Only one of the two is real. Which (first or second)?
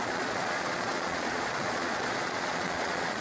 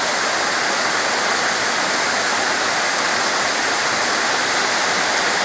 second